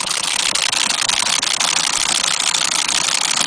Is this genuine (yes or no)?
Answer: yes